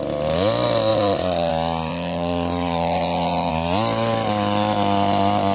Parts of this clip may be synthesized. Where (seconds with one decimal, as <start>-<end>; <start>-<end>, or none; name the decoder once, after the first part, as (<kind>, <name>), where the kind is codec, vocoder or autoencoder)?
0.9-1.5 (vocoder, Vocos); 1.9-3.5